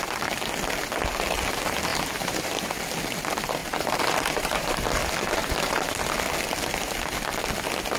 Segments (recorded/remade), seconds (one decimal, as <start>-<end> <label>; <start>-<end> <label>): 0.0-1.9 recorded; 1.9-2.8 remade; 2.8-3.6 recorded; 3.6-4.8 remade; 4.8-5.4 recorded; 5.4-5.9 remade; 5.9-8.0 recorded